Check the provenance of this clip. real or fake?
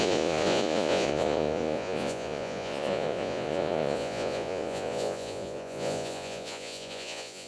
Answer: fake